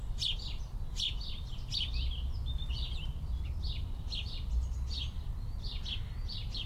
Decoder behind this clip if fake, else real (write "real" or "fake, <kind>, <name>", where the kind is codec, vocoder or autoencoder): real